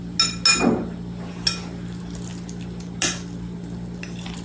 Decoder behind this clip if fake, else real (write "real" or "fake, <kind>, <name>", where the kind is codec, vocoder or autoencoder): real